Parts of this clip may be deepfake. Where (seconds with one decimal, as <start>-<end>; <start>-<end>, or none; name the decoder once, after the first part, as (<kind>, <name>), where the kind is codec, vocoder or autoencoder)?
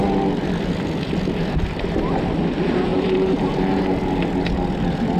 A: 2.9-3.8 (vocoder, BigVGAN v2)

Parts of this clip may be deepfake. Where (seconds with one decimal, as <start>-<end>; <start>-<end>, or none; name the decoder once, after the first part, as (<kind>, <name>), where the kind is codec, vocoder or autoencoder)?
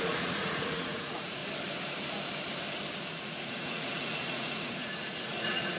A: 0.0-1.4 (vocoder, Vocos); 3.1-5.8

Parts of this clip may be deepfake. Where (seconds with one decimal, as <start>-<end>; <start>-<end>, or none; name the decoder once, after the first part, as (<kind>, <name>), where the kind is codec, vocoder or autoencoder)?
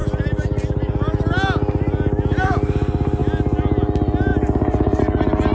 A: 4.3-5.0 (vocoder, BigVGAN v2)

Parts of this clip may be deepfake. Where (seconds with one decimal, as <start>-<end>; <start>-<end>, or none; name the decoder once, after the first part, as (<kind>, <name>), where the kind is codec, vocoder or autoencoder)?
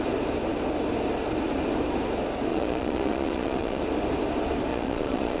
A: 2.5-3.8 (vocoder, Vocos); 4.7-5.4